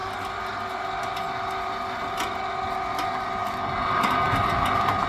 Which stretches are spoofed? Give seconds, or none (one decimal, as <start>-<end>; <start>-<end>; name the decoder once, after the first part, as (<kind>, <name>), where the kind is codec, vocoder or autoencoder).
none

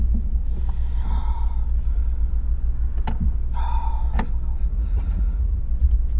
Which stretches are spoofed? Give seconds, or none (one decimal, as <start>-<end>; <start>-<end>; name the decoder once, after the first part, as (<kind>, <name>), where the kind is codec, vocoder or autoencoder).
4.7-5.6 (vocoder, Vocos)

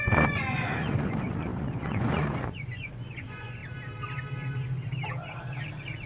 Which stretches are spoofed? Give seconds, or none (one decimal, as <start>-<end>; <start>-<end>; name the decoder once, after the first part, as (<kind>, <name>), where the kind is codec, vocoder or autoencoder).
0.0-3.6 (vocoder, Vocos)

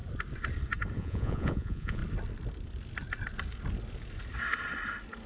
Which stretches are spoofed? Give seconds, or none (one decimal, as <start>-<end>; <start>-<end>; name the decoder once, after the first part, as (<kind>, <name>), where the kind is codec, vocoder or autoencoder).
1.0-2.0 (vocoder, Vocos)

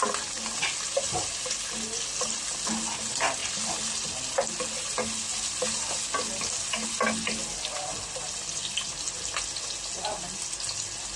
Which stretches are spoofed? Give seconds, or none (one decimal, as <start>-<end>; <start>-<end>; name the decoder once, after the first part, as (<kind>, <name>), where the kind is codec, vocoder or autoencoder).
none